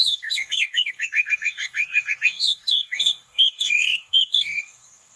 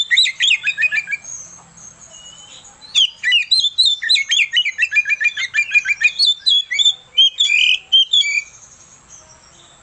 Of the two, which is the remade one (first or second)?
first